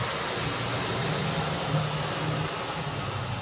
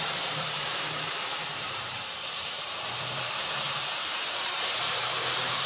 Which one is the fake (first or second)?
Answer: second